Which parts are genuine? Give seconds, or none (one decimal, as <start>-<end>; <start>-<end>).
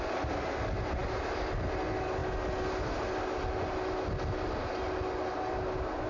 0.0-6.1